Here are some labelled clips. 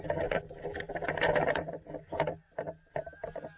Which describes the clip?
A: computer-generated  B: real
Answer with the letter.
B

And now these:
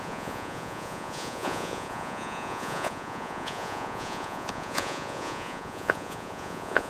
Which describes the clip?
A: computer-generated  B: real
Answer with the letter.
A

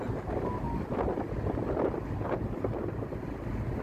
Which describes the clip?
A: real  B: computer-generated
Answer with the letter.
A